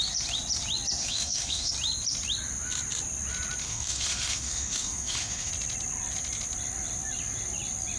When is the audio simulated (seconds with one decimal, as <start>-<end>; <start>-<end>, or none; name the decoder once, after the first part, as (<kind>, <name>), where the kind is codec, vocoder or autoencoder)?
1.0-1.7 (autoencoder, DAC-VAE); 3.6-5.5